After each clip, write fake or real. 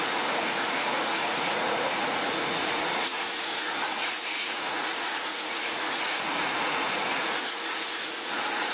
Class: fake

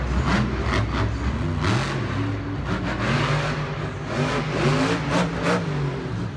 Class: real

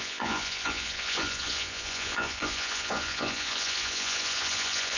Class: fake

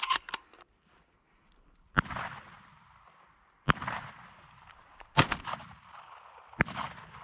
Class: real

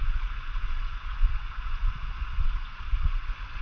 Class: fake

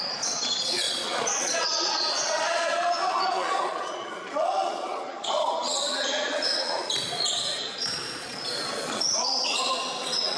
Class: fake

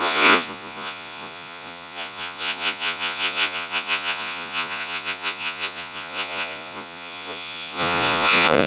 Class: fake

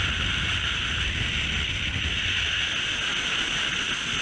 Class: real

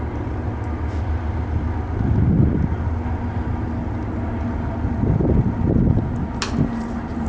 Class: real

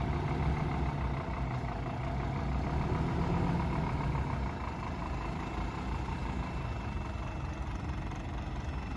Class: real